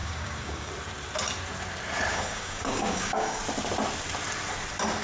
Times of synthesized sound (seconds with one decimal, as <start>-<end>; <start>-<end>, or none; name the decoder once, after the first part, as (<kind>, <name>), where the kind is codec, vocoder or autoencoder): 0.0-0.7 (codec, DAC); 2.1-3.4